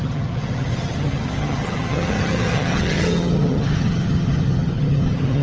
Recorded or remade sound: remade